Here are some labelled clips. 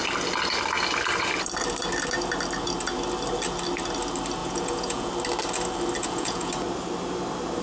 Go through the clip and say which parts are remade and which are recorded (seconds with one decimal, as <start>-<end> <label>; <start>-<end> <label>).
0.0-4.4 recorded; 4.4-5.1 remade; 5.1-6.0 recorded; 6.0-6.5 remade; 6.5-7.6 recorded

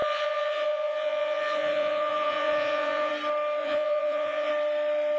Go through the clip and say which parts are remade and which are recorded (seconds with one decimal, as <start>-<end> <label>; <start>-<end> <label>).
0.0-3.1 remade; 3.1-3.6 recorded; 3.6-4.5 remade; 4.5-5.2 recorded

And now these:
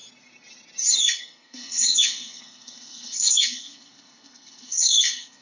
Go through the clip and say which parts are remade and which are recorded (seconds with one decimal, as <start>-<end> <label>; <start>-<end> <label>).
0.0-1.0 recorded; 1.0-5.4 remade

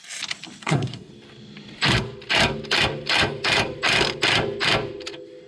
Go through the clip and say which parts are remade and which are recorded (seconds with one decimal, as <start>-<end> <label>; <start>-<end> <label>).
0.0-0.6 recorded; 0.6-1.1 remade; 1.1-5.5 recorded

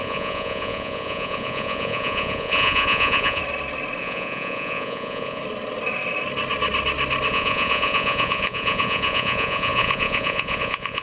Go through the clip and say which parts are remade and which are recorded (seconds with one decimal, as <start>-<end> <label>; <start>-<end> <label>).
0.0-3.4 remade; 3.4-4.0 recorded; 4.0-5.4 remade; 5.4-7.3 recorded; 7.3-11.0 remade

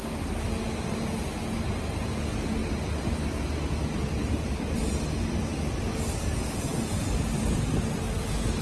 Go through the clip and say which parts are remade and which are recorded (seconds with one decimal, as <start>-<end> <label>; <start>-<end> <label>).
0.0-2.6 recorded; 2.6-4.5 remade; 4.5-6.7 recorded; 6.7-7.7 remade; 7.7-8.6 recorded

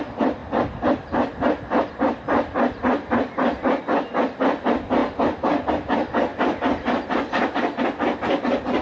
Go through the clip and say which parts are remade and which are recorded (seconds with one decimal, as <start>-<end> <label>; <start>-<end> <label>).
0.0-0.4 recorded; 0.4-3.8 remade; 3.8-8.8 recorded

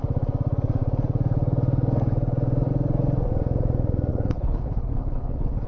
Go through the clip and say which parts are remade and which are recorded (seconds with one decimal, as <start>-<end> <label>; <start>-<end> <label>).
0.0-4.1 recorded; 4.1-5.7 remade